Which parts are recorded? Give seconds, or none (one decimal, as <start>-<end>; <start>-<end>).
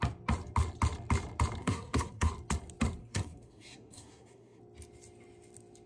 0.0-1.6; 2.3-3.0; 4.6-5.9